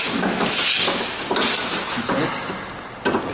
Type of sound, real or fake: real